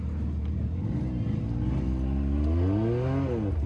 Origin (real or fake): real